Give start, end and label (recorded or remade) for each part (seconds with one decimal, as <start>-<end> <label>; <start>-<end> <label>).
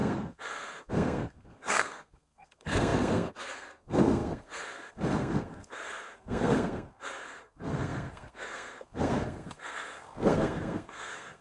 0.0-11.4 remade